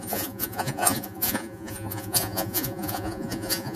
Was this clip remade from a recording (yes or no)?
yes